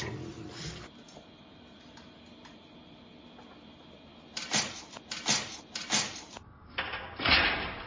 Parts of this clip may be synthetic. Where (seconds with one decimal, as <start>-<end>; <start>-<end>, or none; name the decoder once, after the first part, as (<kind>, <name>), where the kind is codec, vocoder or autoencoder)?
none

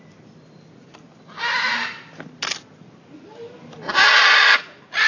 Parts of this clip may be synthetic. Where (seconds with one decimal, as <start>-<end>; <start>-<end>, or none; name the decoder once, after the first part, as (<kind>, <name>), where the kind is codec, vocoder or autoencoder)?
none

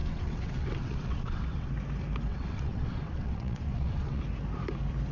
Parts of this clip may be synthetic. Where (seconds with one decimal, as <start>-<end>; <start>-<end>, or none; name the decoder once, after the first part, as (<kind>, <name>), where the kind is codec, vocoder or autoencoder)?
0.0-1.7 (vocoder, WaveNeXt); 2.3-4.2

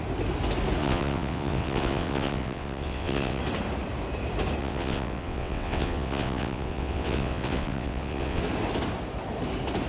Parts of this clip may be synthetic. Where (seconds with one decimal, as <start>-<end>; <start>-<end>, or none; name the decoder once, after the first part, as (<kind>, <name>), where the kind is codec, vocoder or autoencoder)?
0.8-3.4 (vocoder, WaveNeXt); 4.6-8.4